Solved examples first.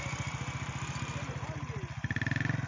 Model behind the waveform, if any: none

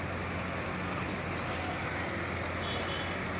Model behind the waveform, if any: none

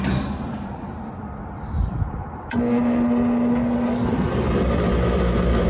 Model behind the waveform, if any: none